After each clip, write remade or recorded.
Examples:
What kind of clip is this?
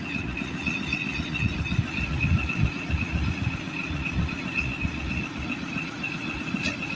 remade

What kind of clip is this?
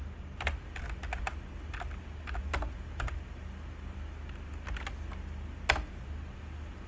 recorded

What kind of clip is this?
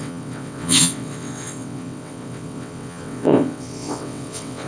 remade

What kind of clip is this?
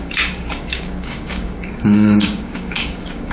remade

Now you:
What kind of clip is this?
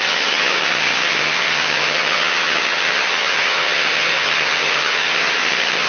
remade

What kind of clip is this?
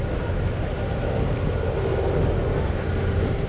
recorded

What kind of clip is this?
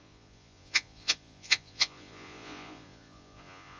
remade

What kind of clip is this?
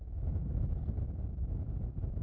recorded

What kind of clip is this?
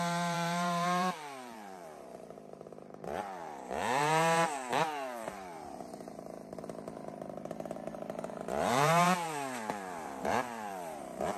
remade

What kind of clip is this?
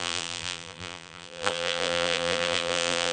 remade